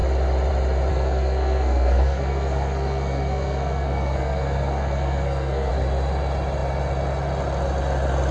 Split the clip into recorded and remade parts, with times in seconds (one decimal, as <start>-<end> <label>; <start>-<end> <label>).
0.0-0.9 recorded; 0.9-5.7 remade; 5.7-8.3 recorded